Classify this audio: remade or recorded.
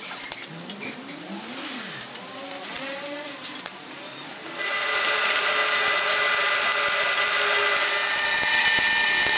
recorded